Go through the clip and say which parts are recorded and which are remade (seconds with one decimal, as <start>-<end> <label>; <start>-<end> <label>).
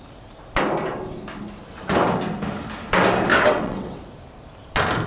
0.0-3.3 recorded; 3.3-4.0 remade; 4.0-5.1 recorded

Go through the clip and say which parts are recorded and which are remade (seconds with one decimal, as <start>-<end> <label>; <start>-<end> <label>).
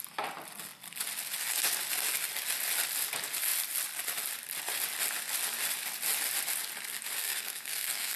0.0-7.2 recorded; 7.2-8.2 remade